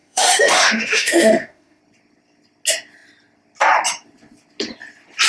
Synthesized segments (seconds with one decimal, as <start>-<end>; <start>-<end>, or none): 0.0-1.8